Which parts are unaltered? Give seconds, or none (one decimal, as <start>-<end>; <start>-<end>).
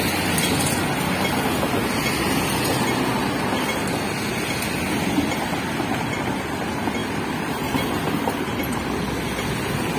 0.0-7.0; 8.8-10.0